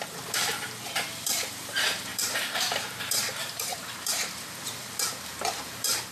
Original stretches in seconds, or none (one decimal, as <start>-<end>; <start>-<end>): none